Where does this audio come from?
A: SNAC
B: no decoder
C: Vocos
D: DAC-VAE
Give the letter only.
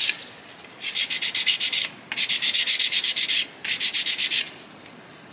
B